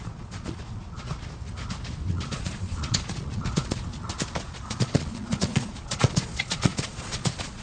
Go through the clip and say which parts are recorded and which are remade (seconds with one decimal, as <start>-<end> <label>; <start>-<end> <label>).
0.0-1.1 remade; 1.1-2.1 recorded; 2.1-3.9 remade; 3.9-4.4 recorded; 4.4-7.6 remade